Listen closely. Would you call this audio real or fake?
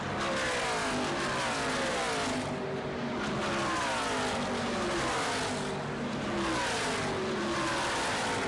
real